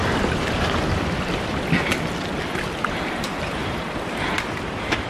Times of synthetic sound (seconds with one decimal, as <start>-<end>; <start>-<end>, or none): 3.1-3.6; 4.6-5.1